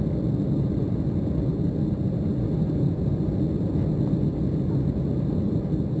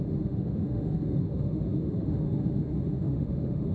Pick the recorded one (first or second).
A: first